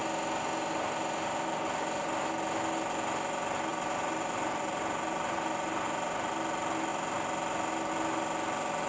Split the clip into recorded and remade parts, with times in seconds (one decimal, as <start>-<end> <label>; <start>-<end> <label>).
0.0-3.7 recorded; 3.7-6.3 remade; 6.3-8.9 recorded